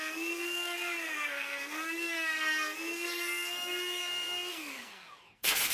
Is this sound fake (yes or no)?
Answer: yes